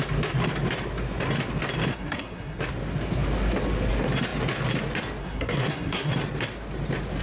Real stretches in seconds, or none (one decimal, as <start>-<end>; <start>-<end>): 0.0-1.9; 2.6-5.2; 6.1-7.2